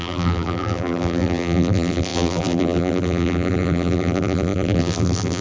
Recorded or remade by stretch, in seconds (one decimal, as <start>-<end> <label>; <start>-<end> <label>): 0.0-5.4 remade